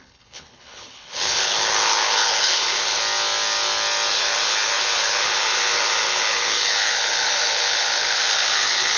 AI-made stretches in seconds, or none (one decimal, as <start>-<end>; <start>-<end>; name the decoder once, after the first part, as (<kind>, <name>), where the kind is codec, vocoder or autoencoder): 0.0-3.0 (codec, HILCodec); 4.1-9.0